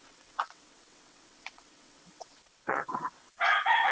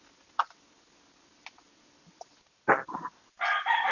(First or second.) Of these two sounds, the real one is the second